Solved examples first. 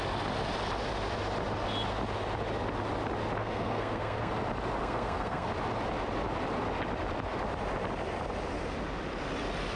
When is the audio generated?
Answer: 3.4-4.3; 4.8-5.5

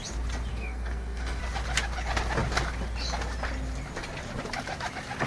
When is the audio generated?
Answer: 0.5-1.4

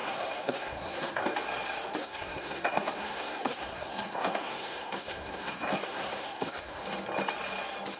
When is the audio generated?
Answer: 0.0-1.2; 2.0-6.8

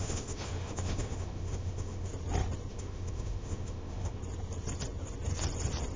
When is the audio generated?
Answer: 0.0-2.1; 2.7-4.2

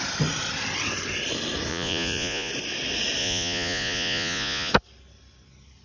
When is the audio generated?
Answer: 1.7-2.5; 3.2-4.7

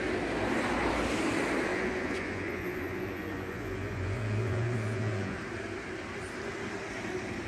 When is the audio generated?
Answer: 1.7-5.4